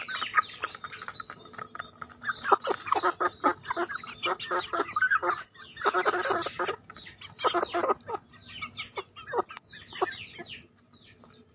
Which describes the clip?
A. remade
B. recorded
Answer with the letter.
B